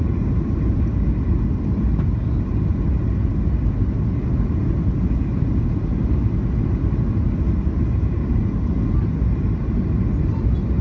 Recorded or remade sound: recorded